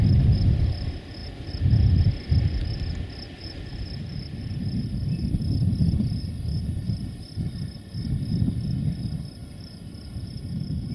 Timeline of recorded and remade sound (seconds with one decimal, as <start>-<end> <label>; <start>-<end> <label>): 0.0-9.4 recorded; 9.4-10.9 remade